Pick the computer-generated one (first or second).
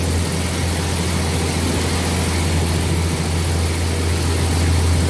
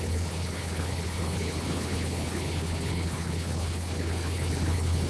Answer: second